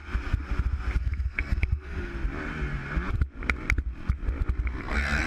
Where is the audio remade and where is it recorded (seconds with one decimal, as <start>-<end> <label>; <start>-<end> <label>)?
0.0-1.0 recorded; 1.0-2.1 remade; 2.1-4.8 recorded; 4.8-5.3 remade

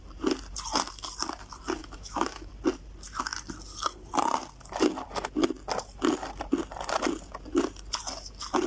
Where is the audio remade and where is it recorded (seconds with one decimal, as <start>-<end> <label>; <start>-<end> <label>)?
0.0-1.8 recorded; 1.8-2.5 remade; 2.5-8.7 recorded

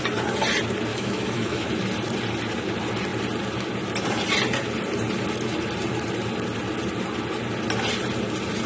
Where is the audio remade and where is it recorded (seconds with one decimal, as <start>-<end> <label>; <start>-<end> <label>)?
0.0-0.9 recorded; 0.9-1.7 remade; 1.7-8.7 recorded

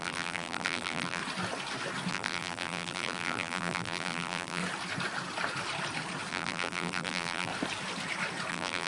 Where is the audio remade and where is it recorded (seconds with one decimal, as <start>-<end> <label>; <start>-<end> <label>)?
0.0-1.2 remade; 1.2-2.1 recorded; 2.1-4.6 remade; 4.6-6.3 recorded; 6.3-7.5 remade; 7.5-8.5 recorded; 8.5-8.9 remade

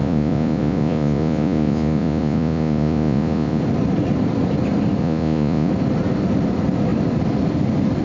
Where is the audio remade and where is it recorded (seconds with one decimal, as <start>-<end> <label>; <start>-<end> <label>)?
0.0-3.6 remade; 3.6-5.0 recorded; 5.0-5.7 remade; 5.7-8.0 recorded